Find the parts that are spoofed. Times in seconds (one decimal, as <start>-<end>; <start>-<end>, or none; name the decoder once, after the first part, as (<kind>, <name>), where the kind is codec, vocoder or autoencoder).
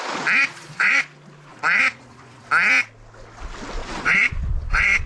0.4-1.0 (vocoder, Vocos); 1.5-2.5; 3.8-5.1